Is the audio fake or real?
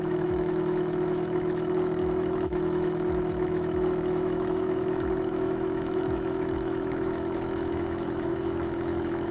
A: fake